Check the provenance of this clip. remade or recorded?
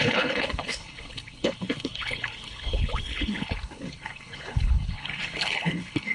remade